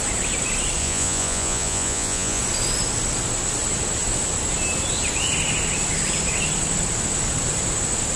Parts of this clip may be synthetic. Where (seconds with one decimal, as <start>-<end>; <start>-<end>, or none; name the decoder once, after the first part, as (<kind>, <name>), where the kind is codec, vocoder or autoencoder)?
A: 0.8-2.4 (vocoder, Vocos)